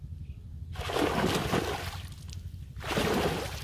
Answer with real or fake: real